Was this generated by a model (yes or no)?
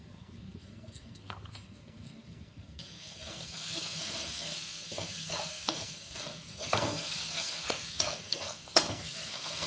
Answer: yes